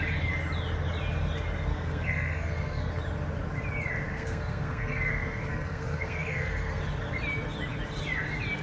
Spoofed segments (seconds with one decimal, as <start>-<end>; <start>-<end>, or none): 1.7-2.9; 4.1-6.8